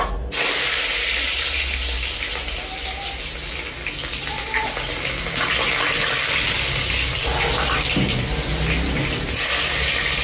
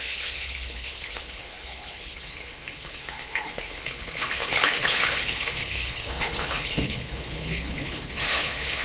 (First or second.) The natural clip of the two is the first